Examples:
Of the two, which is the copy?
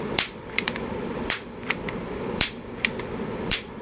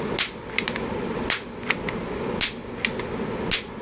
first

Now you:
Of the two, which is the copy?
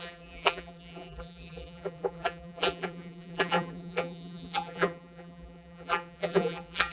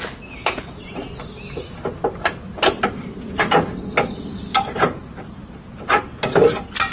first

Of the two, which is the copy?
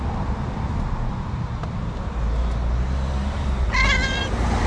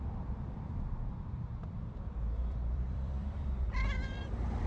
second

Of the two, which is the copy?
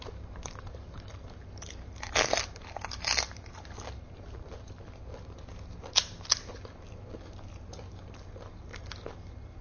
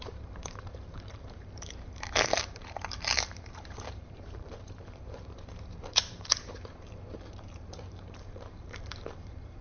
second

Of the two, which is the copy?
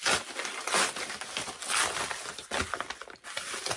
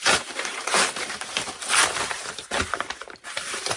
second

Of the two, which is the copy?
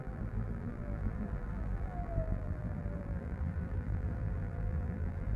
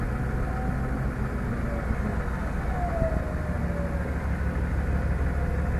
first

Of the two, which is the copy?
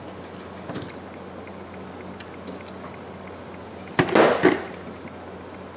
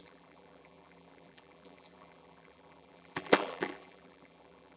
second